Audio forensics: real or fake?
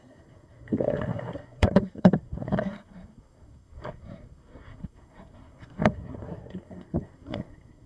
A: fake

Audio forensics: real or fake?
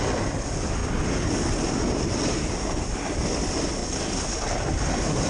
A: real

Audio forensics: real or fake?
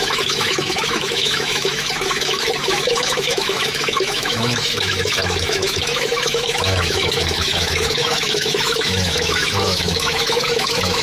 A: fake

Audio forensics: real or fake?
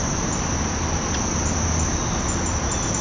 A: real